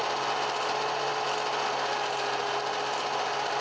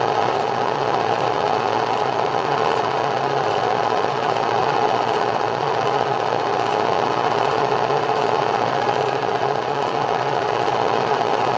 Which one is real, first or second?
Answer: first